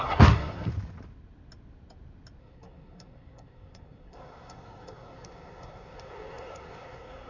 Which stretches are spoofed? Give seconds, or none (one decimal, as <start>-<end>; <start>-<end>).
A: 0.0-0.7; 2.4-7.3